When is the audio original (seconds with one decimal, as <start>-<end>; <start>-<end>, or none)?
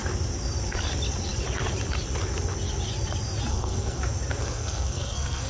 0.0-3.5; 4.0-4.4